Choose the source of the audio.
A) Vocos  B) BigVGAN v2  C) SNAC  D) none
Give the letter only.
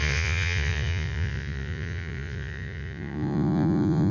A